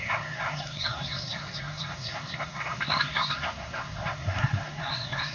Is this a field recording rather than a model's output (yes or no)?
no